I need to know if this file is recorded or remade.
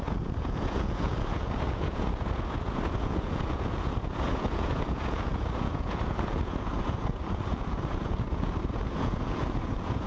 remade